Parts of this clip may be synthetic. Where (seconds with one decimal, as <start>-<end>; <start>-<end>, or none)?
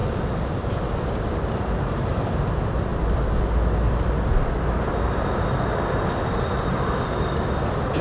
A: none